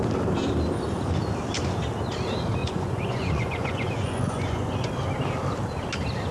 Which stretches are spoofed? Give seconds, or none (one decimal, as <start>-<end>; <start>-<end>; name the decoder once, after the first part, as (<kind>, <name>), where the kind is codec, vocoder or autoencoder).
2.6-4.9 (vocoder, Vocos)